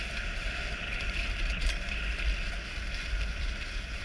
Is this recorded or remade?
recorded